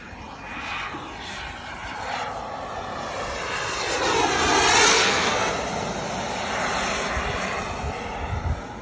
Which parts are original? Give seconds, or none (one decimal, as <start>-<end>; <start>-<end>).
0.0-4.9; 5.5-8.8